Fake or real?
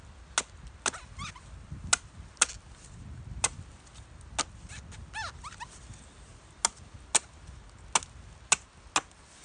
real